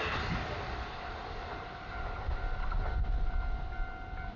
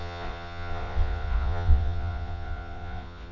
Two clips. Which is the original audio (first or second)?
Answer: first